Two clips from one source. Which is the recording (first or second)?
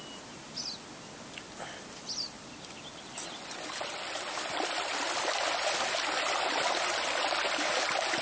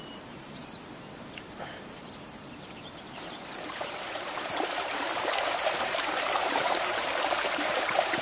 first